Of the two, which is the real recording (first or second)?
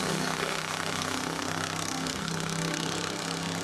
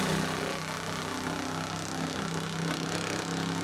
second